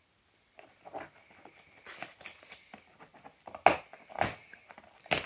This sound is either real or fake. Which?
real